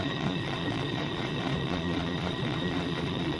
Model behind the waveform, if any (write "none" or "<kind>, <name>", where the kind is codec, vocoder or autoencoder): vocoder, Vocos